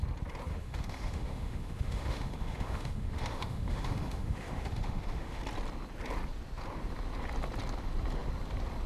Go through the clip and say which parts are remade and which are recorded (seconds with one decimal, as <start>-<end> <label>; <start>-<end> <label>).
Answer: 0.0-0.5 recorded; 0.5-5.4 remade; 5.4-8.9 recorded